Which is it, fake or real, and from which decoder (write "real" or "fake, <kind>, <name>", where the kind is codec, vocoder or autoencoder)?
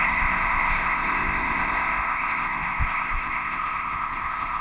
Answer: fake, codec, ZipCodec